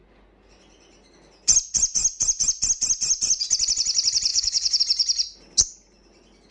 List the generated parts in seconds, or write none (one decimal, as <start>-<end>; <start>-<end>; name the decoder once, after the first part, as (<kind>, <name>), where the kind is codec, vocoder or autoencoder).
4.3-4.8 (codec, DAC)